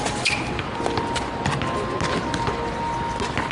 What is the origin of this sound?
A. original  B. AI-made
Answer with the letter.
A